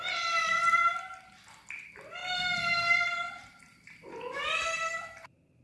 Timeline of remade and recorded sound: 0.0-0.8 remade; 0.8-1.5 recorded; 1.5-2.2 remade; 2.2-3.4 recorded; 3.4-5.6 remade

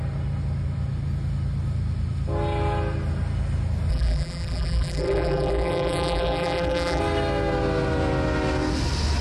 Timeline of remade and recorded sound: 0.0-3.9 recorded; 3.9-7.0 remade; 7.0-9.2 recorded

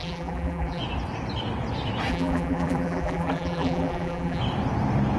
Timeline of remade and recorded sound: 0.0-0.8 remade; 0.8-2.1 recorded; 2.1-4.4 remade; 4.4-5.2 recorded

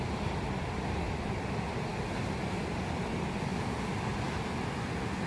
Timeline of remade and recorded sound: 0.0-5.3 recorded

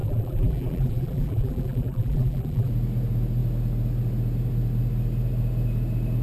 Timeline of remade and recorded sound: 0.0-2.7 remade; 2.7-6.2 recorded